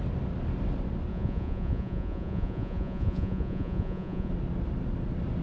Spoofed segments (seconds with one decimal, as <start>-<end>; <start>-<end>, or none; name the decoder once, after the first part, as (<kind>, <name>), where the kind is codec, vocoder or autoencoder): 1.1-4.3 (vocoder, Vocos)